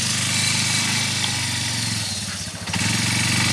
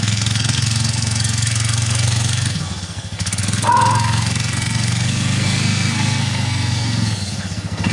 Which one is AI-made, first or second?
second